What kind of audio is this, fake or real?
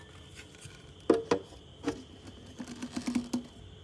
real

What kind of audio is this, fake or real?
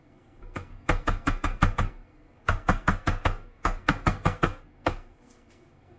fake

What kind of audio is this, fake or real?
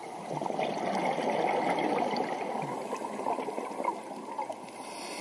real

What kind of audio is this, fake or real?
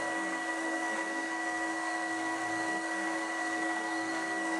fake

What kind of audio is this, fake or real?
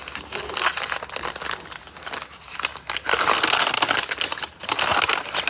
real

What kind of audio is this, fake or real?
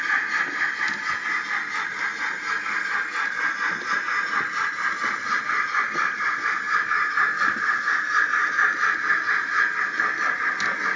real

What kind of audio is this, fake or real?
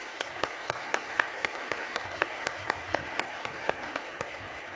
fake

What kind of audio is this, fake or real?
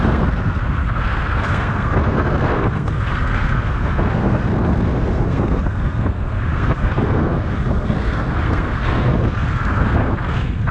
fake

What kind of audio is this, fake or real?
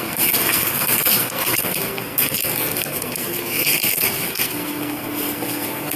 fake